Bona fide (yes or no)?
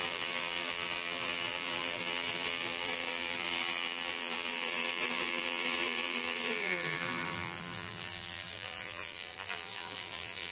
no